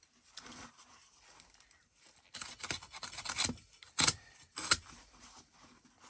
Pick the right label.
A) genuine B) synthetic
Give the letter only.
A